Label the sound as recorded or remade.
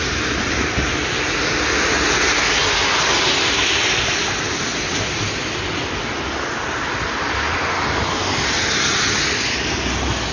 recorded